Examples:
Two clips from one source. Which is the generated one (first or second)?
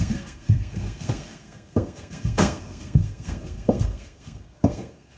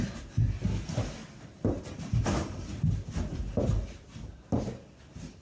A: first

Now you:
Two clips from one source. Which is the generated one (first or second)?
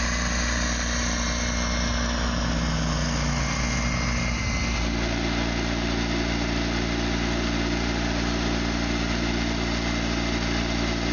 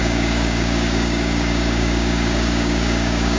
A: second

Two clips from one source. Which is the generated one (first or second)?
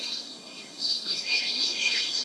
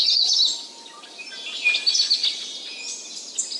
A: first